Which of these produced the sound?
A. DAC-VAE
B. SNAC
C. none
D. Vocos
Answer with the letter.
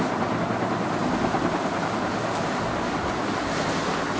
C